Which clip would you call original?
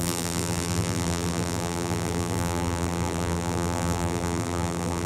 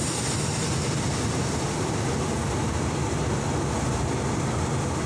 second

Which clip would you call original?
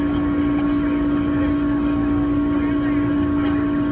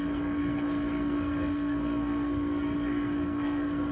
first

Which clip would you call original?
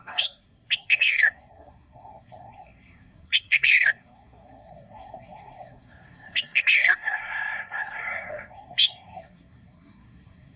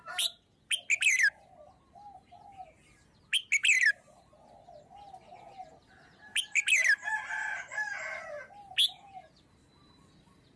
second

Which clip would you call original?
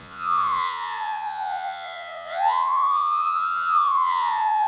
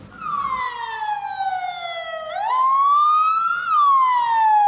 second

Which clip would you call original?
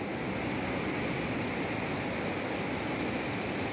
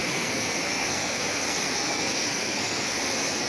first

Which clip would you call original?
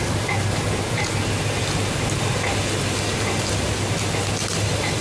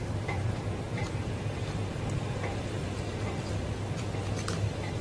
first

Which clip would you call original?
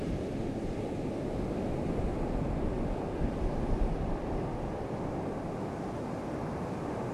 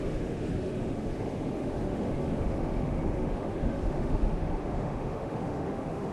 first